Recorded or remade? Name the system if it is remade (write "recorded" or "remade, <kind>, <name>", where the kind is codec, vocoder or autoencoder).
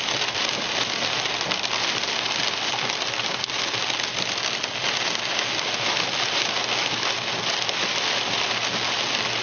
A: recorded